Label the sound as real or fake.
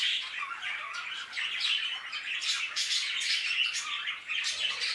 real